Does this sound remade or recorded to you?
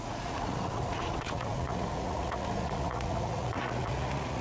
remade